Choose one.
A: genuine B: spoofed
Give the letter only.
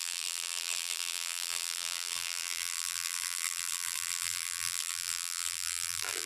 B